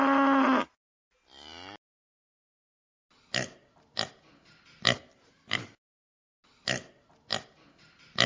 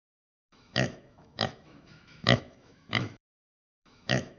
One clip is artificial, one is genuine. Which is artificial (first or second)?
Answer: second